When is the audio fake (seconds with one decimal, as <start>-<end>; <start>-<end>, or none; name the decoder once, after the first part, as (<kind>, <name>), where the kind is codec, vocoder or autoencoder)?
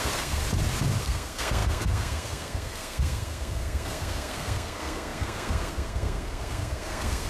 0.0-0.4 (codec, SNAC); 1.0-7.3